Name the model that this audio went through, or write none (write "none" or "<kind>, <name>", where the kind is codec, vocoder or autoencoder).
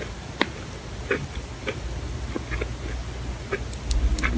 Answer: none